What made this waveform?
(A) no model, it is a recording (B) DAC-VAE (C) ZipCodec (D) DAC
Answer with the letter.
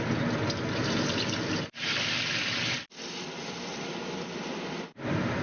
A